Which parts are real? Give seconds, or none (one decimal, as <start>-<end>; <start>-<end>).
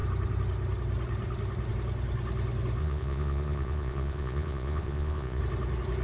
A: 0.0-2.8; 5.4-6.0